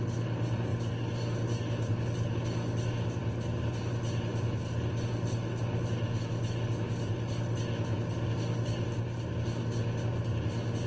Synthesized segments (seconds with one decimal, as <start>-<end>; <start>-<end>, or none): none